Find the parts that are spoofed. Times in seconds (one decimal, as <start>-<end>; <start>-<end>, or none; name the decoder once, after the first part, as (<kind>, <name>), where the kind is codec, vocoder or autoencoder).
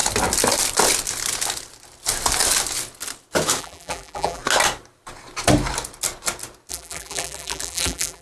3.6-4.4 (vocoder, BigVGAN v2); 6.7-8.2